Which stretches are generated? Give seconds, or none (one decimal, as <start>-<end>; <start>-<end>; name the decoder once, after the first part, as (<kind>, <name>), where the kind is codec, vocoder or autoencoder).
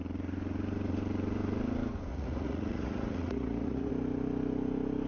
2.1-3.9 (vocoder, Vocos)